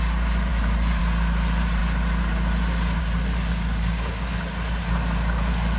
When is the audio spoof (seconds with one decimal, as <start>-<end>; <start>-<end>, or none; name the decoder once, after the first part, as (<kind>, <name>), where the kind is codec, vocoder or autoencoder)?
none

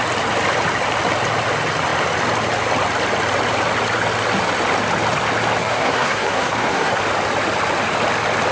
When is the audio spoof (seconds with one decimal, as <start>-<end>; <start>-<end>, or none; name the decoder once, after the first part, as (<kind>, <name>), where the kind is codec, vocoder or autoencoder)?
5.6-7.0 (codec, SNAC)

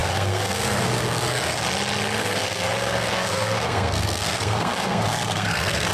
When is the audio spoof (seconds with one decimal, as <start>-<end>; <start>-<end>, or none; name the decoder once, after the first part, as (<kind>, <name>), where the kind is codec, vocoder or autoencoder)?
0.0-1.6 (codec, SNAC); 2.2-5.9

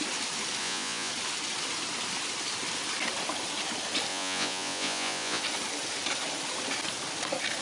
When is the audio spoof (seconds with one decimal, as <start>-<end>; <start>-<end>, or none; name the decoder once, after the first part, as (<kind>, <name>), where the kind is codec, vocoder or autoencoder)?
0.6-1.1 (vocoder, Vocos); 4.1-5.4

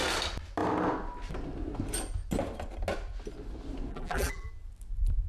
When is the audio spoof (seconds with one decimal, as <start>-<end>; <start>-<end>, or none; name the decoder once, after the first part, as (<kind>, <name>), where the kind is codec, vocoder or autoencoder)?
3.9-4.5 (vocoder, BigVGAN v2)

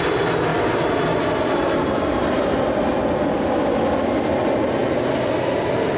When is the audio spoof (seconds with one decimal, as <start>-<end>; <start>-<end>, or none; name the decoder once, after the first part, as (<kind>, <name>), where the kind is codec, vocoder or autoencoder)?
none

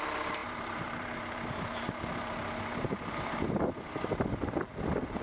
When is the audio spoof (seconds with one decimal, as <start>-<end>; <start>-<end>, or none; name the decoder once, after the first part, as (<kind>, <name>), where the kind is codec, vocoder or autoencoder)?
0.4-3.5 (vocoder, BigVGAN v2)

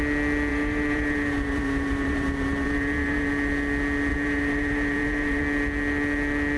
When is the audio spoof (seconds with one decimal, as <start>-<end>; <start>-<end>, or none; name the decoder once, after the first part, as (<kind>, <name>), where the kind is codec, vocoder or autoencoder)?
0.5-3.3 (vocoder, BigVGAN v2); 4.1-5.4